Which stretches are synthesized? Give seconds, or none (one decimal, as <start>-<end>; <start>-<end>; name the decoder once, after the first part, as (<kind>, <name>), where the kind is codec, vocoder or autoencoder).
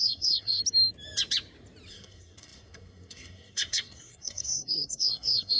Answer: 0.0-0.6 (codec, SNAC); 1.9-5.6